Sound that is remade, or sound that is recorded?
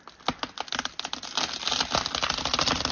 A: recorded